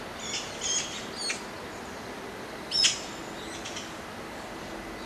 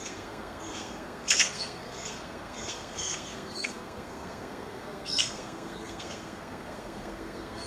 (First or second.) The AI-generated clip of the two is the second